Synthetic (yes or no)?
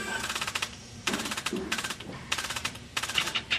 yes